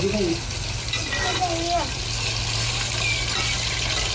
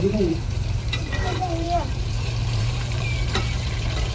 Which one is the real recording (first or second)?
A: first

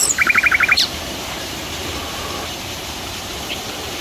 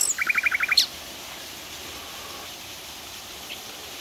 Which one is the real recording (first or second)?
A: second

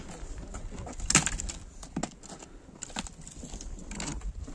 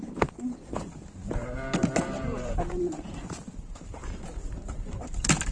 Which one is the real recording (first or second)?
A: first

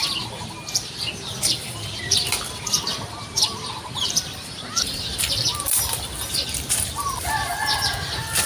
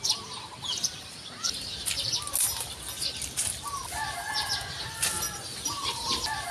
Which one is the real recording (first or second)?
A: second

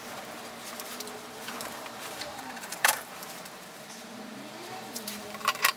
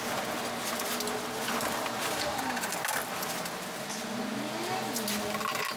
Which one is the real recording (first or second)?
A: second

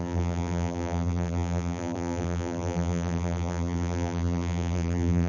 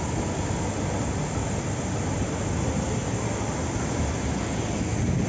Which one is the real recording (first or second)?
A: second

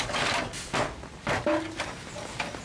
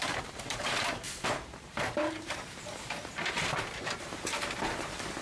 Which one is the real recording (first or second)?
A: first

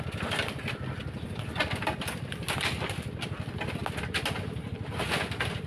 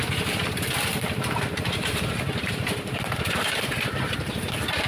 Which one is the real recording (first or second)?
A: first